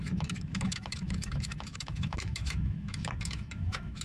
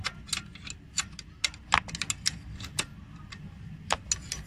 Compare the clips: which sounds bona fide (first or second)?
second